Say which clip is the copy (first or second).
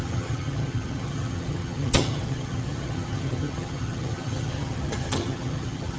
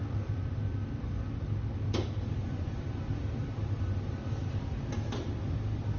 first